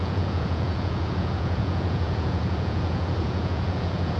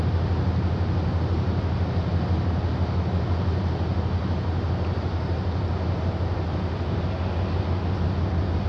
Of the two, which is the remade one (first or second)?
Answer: first